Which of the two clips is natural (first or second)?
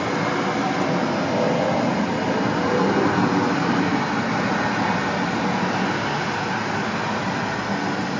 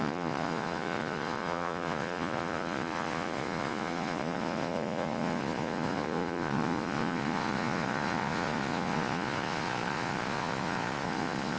first